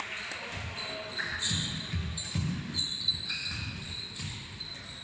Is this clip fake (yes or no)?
yes